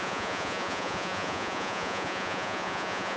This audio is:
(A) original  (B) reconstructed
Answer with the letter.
B